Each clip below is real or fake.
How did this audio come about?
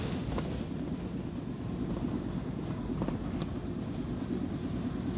real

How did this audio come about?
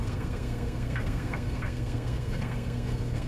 fake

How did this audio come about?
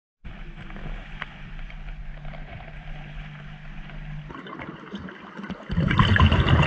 real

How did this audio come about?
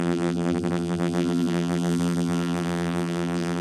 fake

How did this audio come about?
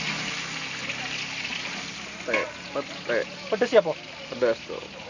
real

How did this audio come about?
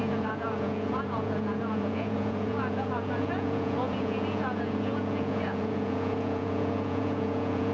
fake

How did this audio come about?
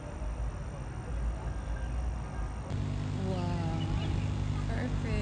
real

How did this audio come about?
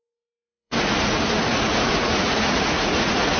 fake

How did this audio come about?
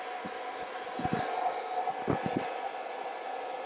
real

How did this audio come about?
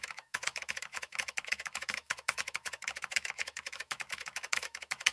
fake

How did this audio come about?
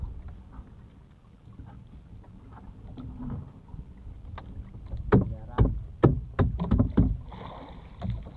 real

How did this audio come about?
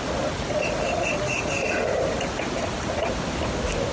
real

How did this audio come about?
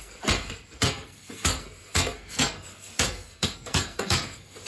fake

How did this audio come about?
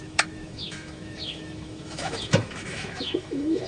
fake